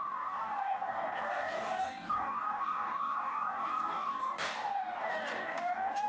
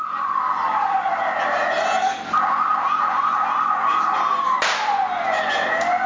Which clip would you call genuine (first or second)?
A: second